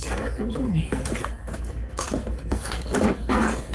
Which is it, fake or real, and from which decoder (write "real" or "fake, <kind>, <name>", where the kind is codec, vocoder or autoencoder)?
fake, codec, SNAC